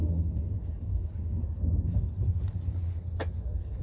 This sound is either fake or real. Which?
real